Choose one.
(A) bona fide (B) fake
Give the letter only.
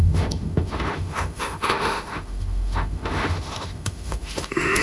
B